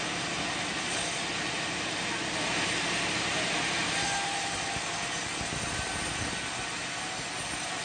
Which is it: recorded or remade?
recorded